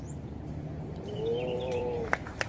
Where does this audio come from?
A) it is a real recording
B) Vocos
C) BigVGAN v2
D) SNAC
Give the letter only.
C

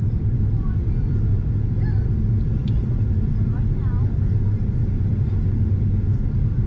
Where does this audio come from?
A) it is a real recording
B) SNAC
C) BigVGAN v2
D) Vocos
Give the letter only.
A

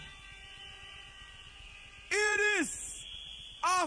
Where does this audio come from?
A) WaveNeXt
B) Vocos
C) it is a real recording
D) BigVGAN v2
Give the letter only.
B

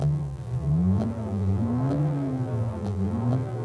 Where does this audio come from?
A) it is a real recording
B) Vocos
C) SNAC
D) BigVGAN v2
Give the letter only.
D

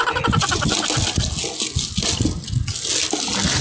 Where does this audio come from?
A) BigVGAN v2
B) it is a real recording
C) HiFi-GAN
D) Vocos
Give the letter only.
B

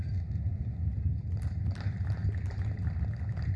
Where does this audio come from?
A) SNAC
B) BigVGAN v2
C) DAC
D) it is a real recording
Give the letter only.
D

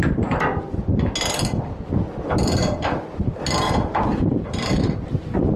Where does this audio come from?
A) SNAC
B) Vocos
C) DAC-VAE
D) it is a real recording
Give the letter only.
D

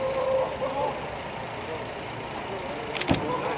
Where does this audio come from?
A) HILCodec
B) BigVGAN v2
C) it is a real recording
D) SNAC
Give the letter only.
C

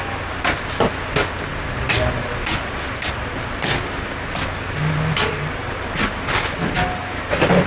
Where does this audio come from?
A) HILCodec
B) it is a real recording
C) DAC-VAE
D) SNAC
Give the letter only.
B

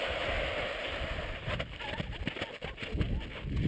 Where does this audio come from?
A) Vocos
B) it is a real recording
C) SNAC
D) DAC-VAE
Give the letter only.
B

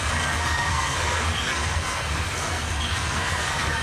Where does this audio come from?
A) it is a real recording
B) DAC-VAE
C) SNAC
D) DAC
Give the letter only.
C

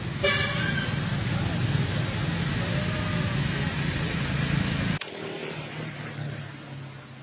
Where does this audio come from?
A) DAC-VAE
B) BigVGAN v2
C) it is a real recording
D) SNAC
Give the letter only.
C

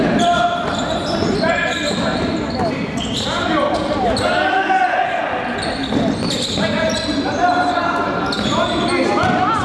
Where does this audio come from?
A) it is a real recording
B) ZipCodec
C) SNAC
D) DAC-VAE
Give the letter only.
A